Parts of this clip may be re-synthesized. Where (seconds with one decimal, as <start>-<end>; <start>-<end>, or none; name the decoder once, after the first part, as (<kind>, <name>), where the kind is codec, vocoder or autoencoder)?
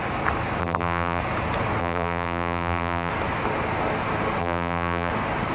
0.6-1.2 (vocoder, BigVGAN v2); 1.8-3.1; 4.4-5.1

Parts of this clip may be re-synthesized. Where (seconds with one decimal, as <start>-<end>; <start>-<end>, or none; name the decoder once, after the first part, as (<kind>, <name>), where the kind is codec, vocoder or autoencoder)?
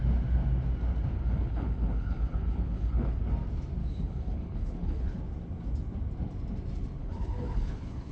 1.1-3.2 (codec, HILCodec); 3.8-5.2; 7.0-8.1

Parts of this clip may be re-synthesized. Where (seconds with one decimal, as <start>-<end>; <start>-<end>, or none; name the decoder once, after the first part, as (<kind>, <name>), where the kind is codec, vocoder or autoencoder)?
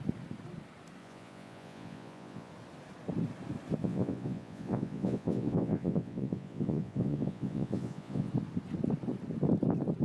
1.0-2.5 (vocoder, Vocos); 3.8-8.3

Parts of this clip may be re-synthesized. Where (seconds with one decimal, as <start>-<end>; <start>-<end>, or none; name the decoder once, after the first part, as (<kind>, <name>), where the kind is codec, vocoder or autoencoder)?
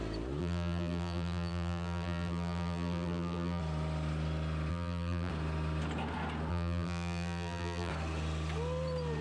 0.4-3.6 (vocoder, BigVGAN v2); 4.7-5.3; 6.5-7.9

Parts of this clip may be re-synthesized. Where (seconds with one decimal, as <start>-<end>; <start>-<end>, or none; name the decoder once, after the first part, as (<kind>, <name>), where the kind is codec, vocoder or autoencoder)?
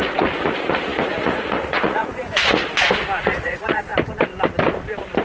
0.0-2.7 (vocoder, Vocos); 3.2-3.9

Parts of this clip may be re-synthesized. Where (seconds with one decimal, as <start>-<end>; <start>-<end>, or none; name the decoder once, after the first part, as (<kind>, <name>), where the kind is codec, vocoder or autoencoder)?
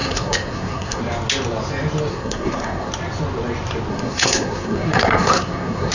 0.0-1.0 (codec, SNAC); 2.1-2.9; 3.9-5.9